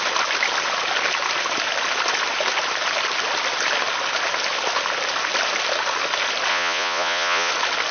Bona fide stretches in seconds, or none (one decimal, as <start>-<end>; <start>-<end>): 0.0-6.5; 7.5-7.9